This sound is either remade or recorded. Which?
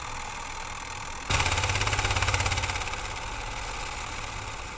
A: recorded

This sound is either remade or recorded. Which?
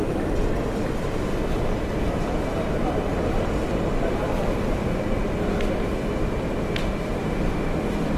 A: recorded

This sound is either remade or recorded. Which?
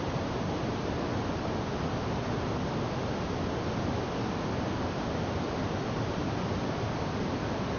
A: recorded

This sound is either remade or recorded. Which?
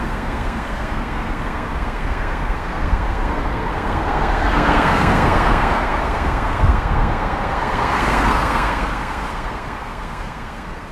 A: remade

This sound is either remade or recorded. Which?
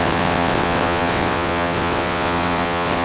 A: remade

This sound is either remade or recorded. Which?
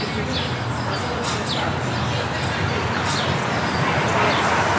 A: recorded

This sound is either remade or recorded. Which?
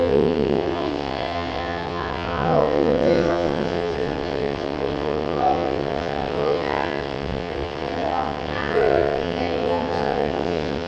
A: remade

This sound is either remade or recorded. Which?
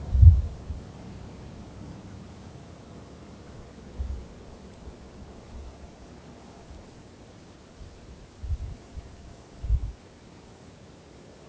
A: remade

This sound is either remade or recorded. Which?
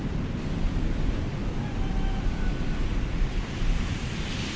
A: recorded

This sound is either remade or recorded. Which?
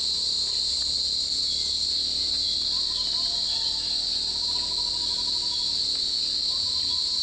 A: recorded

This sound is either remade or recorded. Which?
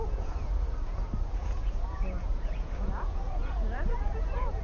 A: remade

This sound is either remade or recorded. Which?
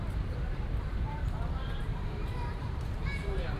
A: remade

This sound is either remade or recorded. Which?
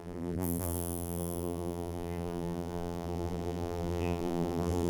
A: remade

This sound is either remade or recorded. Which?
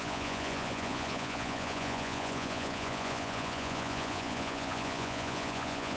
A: remade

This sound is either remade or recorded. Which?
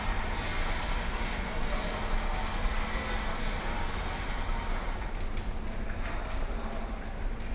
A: recorded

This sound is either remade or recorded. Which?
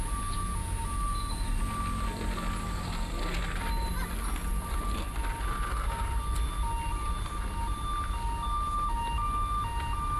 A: recorded